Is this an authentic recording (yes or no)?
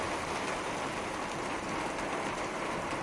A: yes